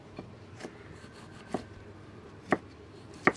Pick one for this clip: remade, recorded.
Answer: recorded